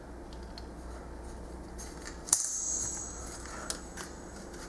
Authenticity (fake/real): real